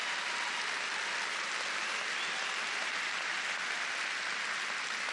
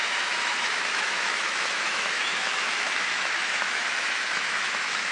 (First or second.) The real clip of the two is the first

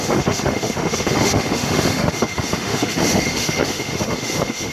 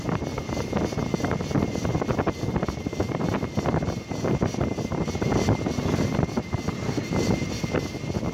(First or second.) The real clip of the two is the second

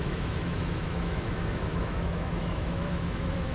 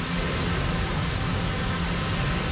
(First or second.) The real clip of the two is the second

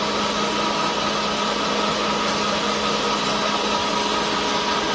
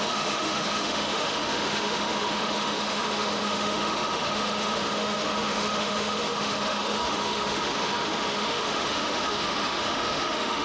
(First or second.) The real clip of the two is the first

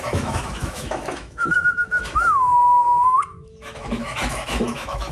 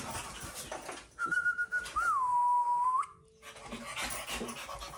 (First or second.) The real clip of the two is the second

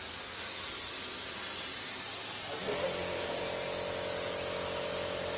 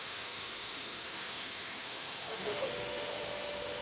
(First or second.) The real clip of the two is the first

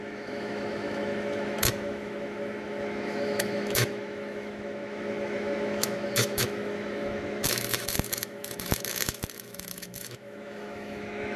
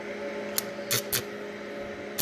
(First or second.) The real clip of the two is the second